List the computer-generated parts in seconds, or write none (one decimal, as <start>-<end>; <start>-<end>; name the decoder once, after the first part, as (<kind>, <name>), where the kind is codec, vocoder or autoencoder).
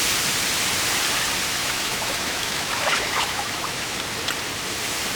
1.6-4.0 (autoencoder, DAC-VAE)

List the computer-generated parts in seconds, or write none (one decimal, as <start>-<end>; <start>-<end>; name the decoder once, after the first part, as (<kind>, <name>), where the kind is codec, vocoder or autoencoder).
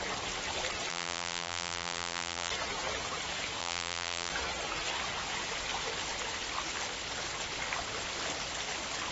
0.9-2.5 (vocoder, BigVGAN v2); 3.6-4.3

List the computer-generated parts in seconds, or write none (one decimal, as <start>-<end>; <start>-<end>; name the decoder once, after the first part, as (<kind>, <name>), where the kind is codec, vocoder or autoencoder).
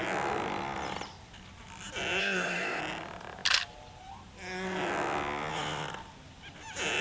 2.2-2.8 (codec, ZipCodec)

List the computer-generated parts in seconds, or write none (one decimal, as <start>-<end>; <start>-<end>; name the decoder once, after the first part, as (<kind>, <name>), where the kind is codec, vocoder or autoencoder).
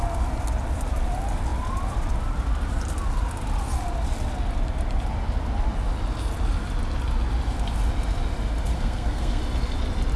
8.7-9.4 (codec, SNAC)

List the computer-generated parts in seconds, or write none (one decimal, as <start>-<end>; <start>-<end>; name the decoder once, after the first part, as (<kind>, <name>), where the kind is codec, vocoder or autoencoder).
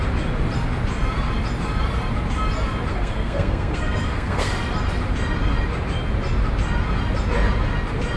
2.9-4.5 (codec, SNAC)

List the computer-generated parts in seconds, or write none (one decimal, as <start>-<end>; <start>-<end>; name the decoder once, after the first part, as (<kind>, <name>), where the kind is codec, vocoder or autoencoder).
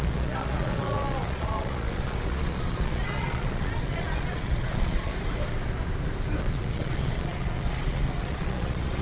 0.0-5.1 (vocoder, Vocos); 6.4-9.0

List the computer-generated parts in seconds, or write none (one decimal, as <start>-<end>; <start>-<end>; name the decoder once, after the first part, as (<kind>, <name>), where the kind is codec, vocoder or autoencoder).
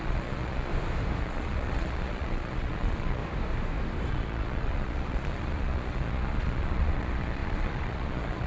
0.0-0.7 (vocoder, Vocos); 1.2-3.2; 4.1-8.5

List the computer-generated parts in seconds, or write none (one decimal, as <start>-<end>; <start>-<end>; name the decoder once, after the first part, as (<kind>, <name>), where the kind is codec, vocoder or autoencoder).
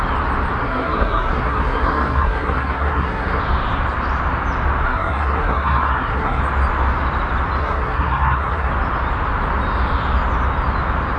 0.6-3.4 (codec, SNAC); 4.8-6.4; 7.6-8.7